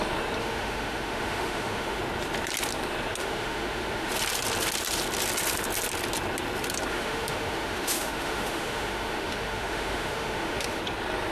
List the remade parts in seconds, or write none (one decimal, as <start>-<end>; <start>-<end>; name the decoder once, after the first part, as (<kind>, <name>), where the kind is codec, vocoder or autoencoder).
0.4-2.0 (autoencoder, DAC-VAE); 3.2-4.1; 6.9-10.8